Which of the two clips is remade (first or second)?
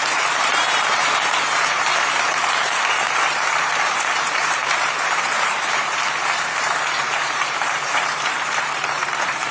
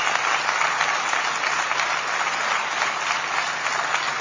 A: first